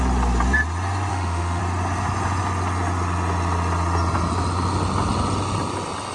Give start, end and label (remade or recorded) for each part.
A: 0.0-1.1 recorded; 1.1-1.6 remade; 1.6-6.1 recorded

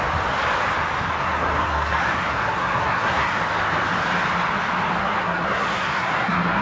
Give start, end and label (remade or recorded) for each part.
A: 0.0-1.2 recorded; 1.2-3.4 remade; 3.4-5.0 recorded; 5.0-6.6 remade